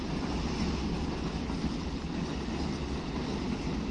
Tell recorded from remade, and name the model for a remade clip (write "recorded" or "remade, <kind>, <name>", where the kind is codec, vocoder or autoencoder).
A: recorded